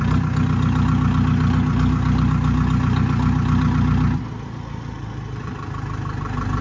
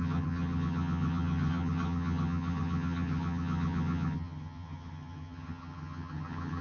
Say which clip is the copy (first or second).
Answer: second